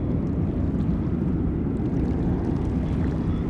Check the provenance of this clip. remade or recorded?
recorded